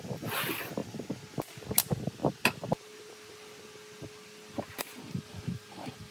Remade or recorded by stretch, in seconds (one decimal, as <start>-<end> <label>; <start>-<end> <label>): 0.0-6.1 recorded

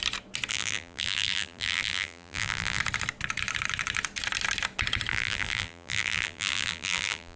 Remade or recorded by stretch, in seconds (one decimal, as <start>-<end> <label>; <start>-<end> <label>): 0.0-0.5 recorded; 0.5-2.8 remade; 2.8-5.1 recorded; 5.1-7.4 remade

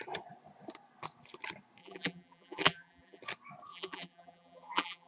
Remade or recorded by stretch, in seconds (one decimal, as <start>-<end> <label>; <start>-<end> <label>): 0.0-1.8 recorded; 1.8-3.2 remade; 3.2-3.7 recorded; 3.7-5.1 remade

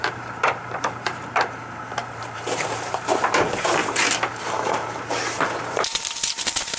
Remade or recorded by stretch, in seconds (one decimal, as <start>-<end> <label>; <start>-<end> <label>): 0.0-6.8 remade

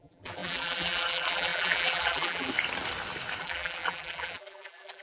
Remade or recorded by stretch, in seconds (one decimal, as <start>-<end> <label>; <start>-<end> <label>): 0.0-2.5 remade; 2.5-3.4 recorded; 3.4-5.0 remade

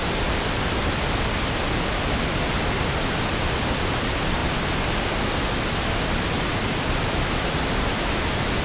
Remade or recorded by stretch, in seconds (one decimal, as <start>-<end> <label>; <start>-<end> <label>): 0.0-8.6 recorded

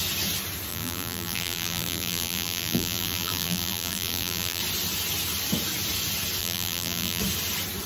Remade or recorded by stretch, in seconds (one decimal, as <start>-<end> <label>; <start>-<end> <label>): 0.0-0.7 recorded; 0.7-4.6 remade; 4.6-6.4 recorded; 6.4-7.2 remade; 7.2-7.9 recorded

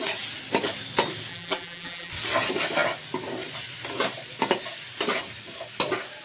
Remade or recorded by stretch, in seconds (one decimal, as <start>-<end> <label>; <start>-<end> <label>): 0.0-1.3 recorded; 1.3-2.1 remade; 2.1-6.2 recorded